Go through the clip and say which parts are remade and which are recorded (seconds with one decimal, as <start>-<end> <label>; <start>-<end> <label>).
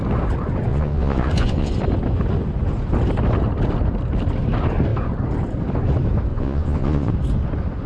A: 0.0-0.7 recorded; 0.7-1.7 remade; 1.7-6.3 recorded; 6.3-7.1 remade; 7.1-7.9 recorded